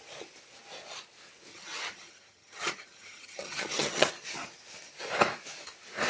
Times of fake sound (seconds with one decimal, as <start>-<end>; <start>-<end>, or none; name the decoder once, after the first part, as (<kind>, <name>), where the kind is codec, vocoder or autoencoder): 1.5-4.1 (vocoder, HiFi-GAN)